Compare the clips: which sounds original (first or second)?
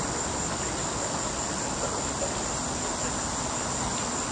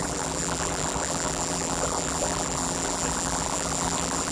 first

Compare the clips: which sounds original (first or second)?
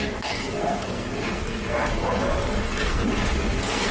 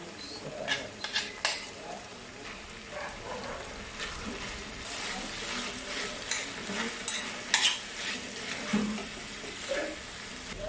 second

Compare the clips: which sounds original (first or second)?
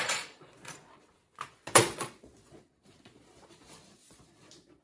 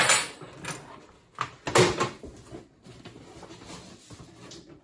second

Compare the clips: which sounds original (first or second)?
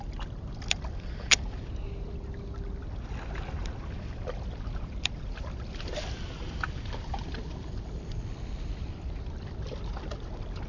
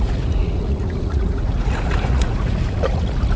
first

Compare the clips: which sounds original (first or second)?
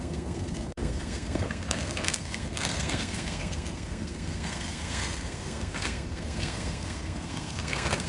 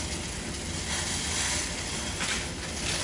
second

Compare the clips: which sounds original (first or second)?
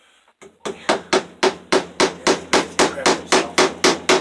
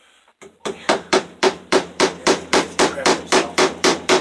first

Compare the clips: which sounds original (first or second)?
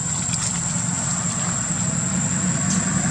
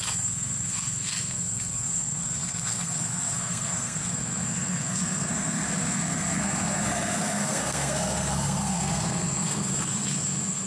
first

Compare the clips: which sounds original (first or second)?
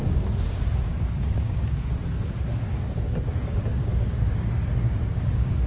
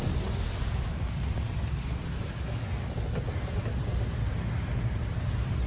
second